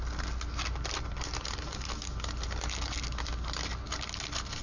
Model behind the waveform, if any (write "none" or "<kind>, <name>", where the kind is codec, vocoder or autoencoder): none